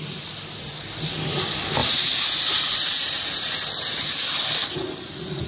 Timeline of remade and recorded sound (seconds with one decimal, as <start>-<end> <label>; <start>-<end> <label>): 0.0-5.5 recorded